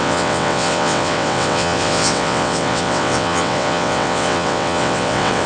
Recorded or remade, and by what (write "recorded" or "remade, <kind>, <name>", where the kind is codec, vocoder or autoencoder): remade, vocoder, WaveNeXt